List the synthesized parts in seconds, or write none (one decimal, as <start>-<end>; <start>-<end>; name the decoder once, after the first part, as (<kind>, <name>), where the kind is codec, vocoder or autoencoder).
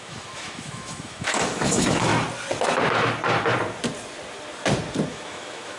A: 0.0-2.1 (autoencoder, DAC-VAE); 5.1-5.8